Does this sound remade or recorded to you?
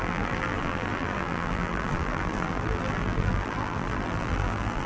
remade